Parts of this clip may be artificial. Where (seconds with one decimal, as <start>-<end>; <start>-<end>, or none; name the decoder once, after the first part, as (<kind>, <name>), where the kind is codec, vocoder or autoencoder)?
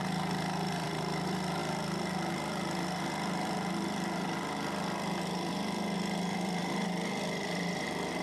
0.0-8.2 (vocoder, BigVGAN v2)